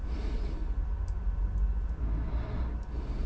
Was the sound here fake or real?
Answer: real